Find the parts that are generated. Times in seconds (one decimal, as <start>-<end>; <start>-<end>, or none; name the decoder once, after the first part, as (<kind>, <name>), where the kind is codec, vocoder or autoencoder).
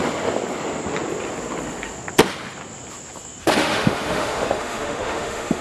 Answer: 3.4-5.6 (autoencoder, DAC-VAE)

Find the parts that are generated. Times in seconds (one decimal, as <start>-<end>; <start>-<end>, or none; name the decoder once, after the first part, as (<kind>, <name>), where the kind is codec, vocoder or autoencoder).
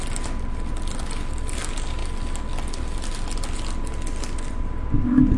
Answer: none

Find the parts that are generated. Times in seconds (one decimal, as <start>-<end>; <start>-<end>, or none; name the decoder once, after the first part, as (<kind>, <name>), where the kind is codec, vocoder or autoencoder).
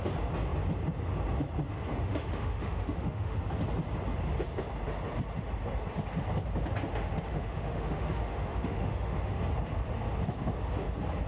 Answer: 1.9-3.4 (autoencoder, DAC-VAE); 6.9-9.4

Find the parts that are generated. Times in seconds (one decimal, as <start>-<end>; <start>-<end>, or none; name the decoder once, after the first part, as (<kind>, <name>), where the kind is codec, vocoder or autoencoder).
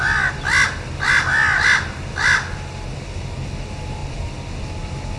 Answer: none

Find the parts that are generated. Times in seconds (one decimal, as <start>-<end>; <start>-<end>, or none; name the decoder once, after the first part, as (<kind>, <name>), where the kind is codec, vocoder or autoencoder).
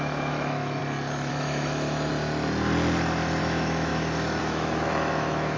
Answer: 0.0-0.8 (autoencoder, DAC-VAE); 1.3-2.1; 3.4-3.9; 4.4-5.6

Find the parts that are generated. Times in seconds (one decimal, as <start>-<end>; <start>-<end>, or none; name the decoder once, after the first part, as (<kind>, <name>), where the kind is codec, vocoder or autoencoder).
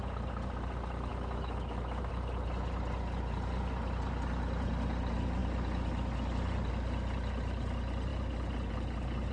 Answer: 1.1-2.1 (autoencoder, DAC-VAE)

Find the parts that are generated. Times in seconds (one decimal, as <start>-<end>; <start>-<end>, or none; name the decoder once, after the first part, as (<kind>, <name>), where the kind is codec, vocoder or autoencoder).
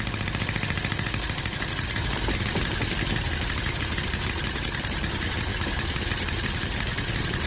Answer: 5.5-6.1 (autoencoder, DAC-VAE)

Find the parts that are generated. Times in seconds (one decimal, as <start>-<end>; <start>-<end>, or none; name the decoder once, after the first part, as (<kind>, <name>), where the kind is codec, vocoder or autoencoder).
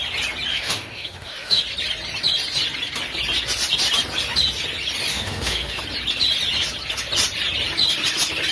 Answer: 0.5-1.6 (autoencoder, DAC-VAE); 5.1-5.8